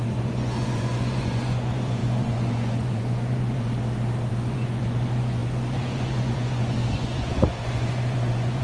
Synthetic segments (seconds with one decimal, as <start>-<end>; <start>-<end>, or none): 0.0-3.7; 4.3-8.6